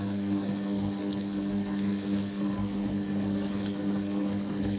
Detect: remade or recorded remade